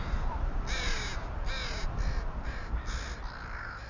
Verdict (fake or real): real